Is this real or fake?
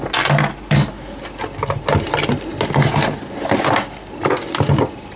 real